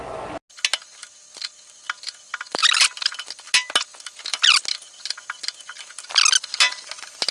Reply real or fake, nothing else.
real